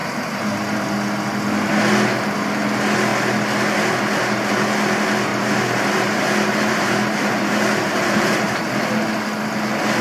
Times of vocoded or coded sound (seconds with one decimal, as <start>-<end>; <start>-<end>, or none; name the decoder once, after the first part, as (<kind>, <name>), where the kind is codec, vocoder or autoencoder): 0.0-0.5 (vocoder, BigVGAN v2); 5.3-8.6